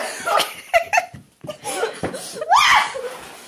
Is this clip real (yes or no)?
yes